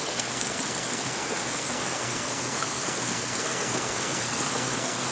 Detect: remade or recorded remade